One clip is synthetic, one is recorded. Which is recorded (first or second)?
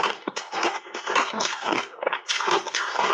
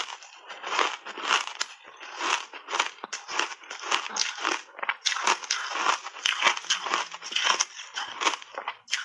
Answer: second